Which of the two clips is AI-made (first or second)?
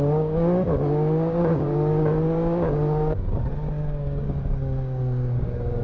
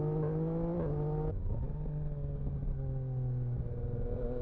first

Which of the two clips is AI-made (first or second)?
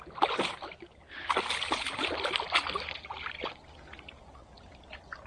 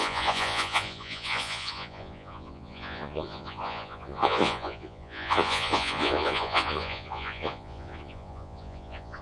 second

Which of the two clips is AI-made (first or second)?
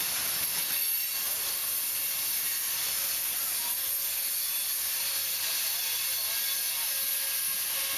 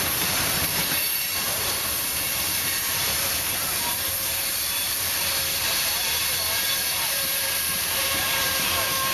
second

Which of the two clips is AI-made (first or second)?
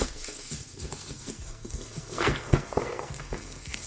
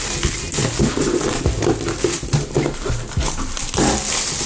first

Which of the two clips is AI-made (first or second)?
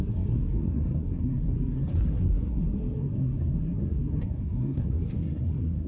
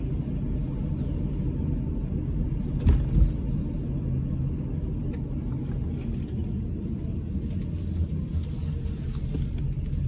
first